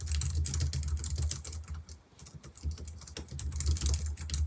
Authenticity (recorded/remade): recorded